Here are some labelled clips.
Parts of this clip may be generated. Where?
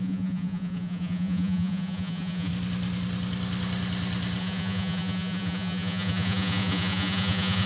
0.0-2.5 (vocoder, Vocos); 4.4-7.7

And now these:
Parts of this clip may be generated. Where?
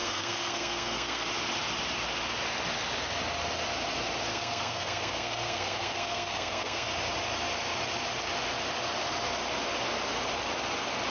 0.0-1.3 (codec, SNAC); 4.3-6.9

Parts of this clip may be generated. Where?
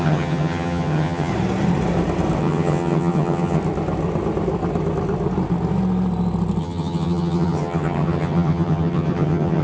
0.0-1.3 (vocoder, HiFi-GAN); 2.4-3.6; 6.6-9.6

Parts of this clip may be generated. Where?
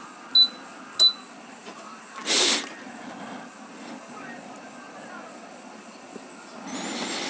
1.6-2.2 (vocoder, BigVGAN v2)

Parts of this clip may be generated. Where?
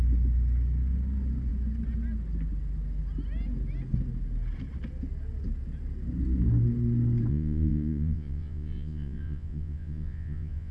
7.3-10.7 (vocoder, Vocos)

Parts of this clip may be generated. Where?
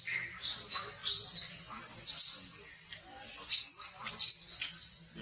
none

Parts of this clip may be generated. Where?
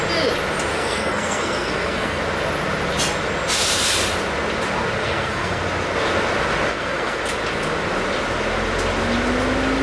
0.7-2.2 (codec, SNAC); 5.0-5.6; 6.7-7.2